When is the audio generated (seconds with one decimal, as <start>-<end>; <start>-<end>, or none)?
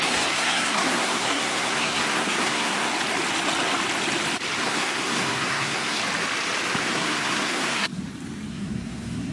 0.0-2.9; 4.6-6.0; 6.8-8.0; 8.5-9.3